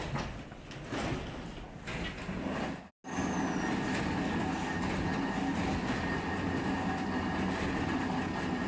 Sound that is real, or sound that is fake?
real